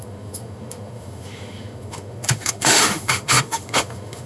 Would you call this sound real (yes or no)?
no